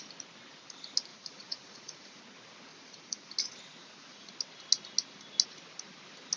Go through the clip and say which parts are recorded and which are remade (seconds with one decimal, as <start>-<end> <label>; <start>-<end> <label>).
0.0-1.1 recorded; 1.1-2.2 remade; 2.2-2.7 recorded; 2.7-3.3 remade; 3.3-3.8 recorded; 3.8-4.3 remade; 4.3-6.4 recorded